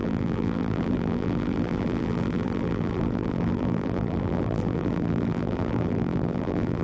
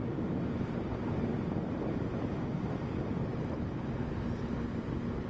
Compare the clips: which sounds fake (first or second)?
first